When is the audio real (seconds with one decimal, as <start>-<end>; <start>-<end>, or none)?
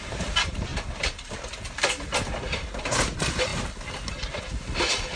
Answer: 0.7-2.8; 3.5-4.4